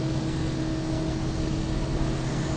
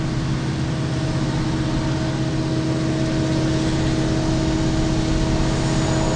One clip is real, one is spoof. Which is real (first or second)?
second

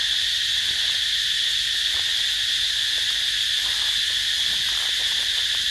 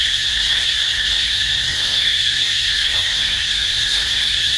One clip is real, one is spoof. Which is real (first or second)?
first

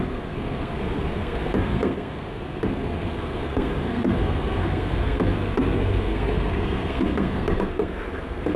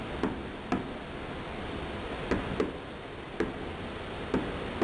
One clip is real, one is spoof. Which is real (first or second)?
second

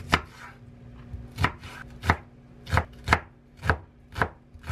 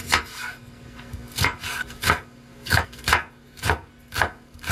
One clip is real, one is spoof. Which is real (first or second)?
first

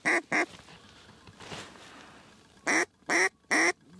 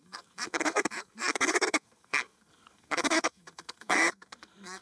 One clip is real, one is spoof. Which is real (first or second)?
first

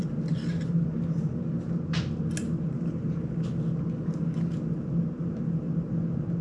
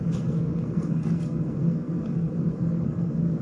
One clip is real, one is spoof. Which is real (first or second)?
first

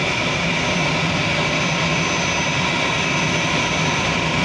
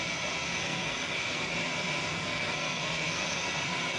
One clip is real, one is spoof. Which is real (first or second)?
first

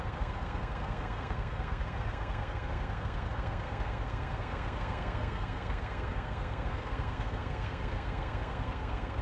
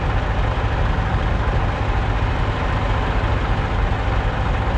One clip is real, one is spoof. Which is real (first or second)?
second